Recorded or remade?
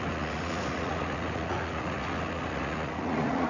remade